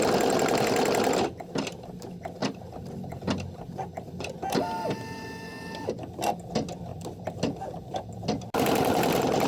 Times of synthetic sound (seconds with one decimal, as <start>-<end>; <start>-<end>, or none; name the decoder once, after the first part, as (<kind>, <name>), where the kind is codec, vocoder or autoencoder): 2.4-5.8 (vocoder, BigVGAN v2); 6.9-9.5